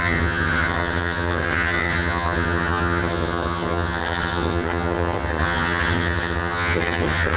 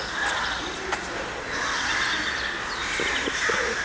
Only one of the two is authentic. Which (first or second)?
second